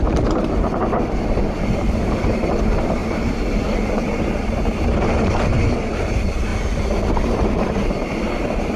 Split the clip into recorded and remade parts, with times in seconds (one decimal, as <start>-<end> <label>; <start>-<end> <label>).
0.0-6.5 remade; 6.5-7.1 recorded; 7.1-8.8 remade